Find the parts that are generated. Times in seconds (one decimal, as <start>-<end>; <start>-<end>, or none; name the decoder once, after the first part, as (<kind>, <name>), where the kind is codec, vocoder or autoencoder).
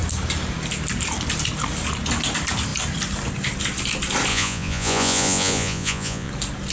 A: 4.3-6.3 (vocoder, Vocos)